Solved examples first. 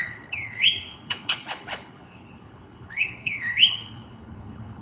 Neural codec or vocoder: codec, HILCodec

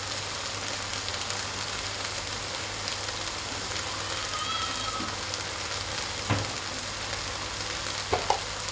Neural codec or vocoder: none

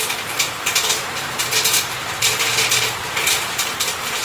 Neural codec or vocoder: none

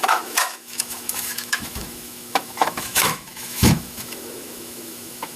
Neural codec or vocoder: autoencoder, DAC-VAE